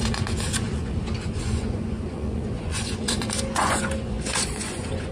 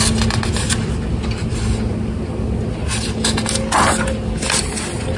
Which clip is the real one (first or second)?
second